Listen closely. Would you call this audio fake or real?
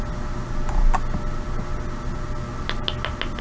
real